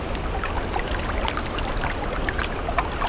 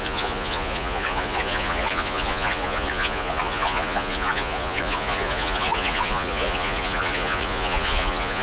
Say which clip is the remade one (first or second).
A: second